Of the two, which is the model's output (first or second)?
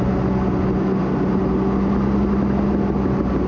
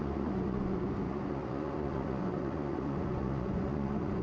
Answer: second